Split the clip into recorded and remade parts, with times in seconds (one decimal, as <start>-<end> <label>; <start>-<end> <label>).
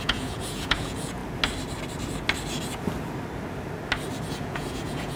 0.0-1.2 remade; 1.2-4.3 recorded; 4.3-5.2 remade